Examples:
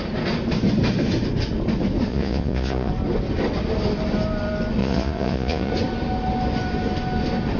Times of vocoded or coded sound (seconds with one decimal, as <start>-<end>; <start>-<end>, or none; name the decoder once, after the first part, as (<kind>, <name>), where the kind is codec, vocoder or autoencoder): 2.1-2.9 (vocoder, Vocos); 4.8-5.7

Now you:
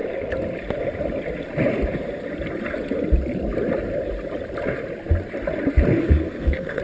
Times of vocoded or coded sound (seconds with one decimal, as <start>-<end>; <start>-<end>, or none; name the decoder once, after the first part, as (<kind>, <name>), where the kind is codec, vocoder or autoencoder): 6.0-6.8 (codec, SNAC)

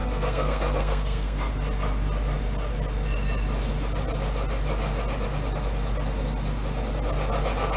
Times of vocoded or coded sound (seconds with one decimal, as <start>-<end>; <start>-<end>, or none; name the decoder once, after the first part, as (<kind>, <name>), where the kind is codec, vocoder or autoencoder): 0.0-1.5 (codec, SNAC)

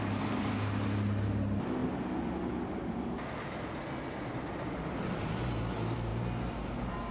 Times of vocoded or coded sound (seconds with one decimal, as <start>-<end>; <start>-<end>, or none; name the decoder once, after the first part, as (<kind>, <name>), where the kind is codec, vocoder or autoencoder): none

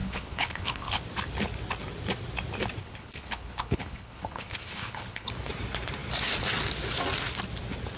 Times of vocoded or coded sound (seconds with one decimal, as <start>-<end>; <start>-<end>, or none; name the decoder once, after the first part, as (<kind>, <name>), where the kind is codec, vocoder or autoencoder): 0.0-1.0 (codec, HILCodec); 2.8-5.3

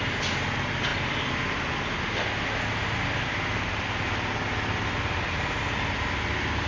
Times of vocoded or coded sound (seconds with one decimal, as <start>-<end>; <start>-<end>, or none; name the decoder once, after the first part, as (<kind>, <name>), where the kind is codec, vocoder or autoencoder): none